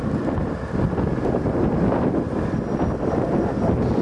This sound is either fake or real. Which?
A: real